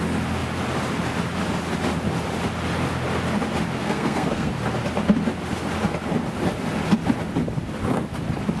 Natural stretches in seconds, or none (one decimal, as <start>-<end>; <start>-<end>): 0.0-3.8; 4.5-8.6